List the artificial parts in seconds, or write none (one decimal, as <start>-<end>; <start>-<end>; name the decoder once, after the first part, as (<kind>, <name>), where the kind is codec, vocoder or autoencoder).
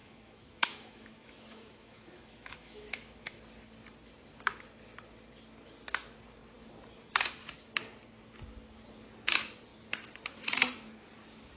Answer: 0.0-3.4 (autoencoder, DAC-VAE)